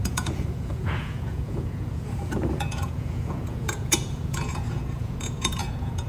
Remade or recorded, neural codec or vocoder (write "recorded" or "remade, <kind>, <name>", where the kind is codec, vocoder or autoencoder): remade, vocoder, Vocos